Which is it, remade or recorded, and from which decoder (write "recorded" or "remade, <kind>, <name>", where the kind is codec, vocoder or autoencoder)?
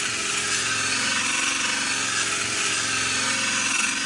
recorded